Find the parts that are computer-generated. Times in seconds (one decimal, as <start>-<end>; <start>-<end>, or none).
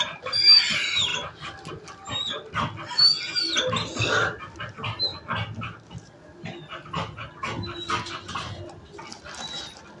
none